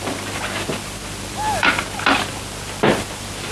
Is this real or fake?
fake